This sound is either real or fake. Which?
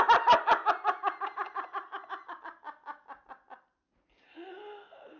real